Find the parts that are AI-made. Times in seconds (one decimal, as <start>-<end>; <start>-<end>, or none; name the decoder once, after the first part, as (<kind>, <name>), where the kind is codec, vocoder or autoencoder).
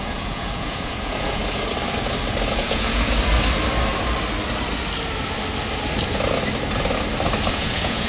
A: 0.0-1.4 (vocoder, Vocos); 2.5-3.2; 7.5-8.1